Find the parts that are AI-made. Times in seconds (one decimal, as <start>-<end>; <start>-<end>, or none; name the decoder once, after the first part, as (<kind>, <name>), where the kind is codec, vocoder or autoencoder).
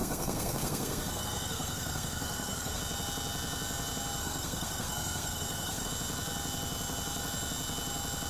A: 0.0-2.8 (codec, SNAC); 4.2-5.9